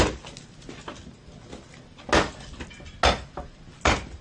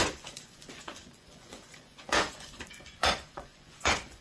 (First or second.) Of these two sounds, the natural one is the first